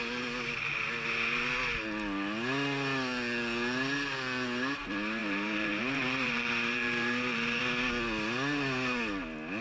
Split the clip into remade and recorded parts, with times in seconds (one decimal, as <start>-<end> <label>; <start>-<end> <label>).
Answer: 0.0-5.2 recorded; 5.2-7.6 remade; 7.6-9.6 recorded